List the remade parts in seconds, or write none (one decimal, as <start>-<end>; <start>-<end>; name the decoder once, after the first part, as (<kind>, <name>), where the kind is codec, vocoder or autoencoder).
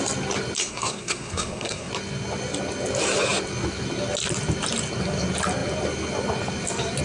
0.6-1.9 (codec, SNAC)